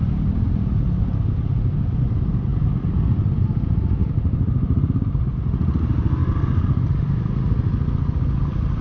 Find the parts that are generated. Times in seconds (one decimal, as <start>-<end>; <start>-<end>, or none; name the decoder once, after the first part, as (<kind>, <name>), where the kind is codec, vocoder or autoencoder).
2.5-3.1 (vocoder, BigVGAN v2); 4.0-5.3; 6.2-7.5